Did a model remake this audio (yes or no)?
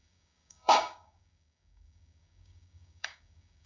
yes